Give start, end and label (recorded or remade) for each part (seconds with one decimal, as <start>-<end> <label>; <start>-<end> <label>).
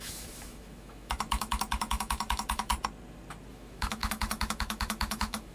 0.0-2.7 remade; 2.7-3.5 recorded; 3.5-5.5 remade